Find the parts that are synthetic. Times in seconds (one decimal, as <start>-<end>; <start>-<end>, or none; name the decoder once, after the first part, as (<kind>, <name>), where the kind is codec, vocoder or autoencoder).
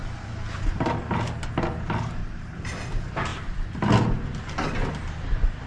0.0-0.8 (vocoder, BigVGAN v2); 2.2-2.7